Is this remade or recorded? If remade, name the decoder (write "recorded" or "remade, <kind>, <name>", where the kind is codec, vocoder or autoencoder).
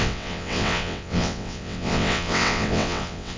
remade, vocoder, WaveNeXt